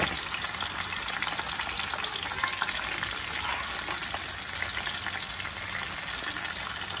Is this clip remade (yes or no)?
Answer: no